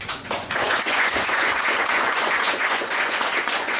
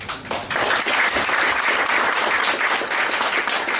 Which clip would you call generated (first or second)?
first